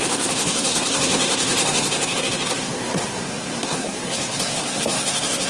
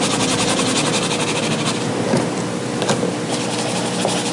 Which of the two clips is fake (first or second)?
first